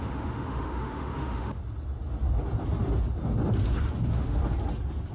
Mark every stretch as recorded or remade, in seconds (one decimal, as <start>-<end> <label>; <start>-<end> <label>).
0.0-1.6 remade; 1.6-4.0 recorded; 4.0-4.4 remade; 4.4-5.1 recorded